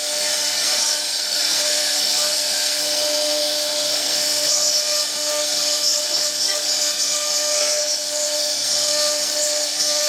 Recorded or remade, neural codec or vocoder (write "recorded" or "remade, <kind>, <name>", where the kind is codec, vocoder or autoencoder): remade, codec, SNAC